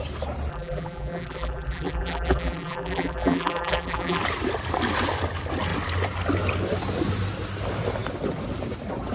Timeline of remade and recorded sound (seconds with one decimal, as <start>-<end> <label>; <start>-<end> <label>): 0.0-0.5 recorded; 0.5-4.2 remade; 4.2-9.1 recorded